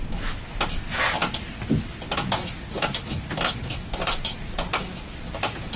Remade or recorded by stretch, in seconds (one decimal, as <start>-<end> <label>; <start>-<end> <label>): 0.0-5.8 recorded